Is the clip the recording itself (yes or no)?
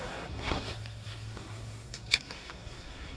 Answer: no